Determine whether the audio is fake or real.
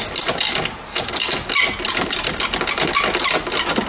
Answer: real